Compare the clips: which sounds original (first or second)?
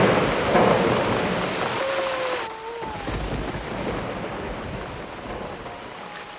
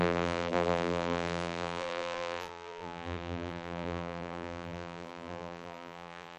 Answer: first